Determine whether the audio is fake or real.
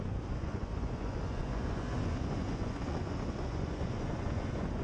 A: fake